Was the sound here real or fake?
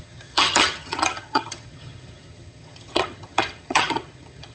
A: fake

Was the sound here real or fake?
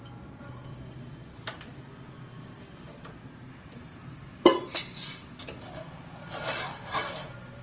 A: real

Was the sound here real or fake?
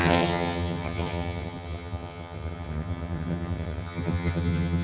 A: fake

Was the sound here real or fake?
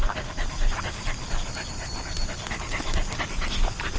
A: real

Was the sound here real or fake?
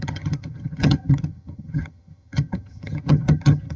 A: fake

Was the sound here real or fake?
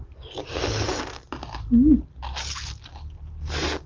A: real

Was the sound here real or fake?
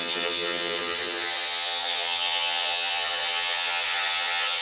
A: fake